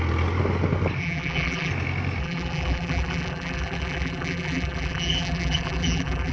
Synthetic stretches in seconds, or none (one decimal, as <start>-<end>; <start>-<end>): 1.0-1.7; 2.2-6.3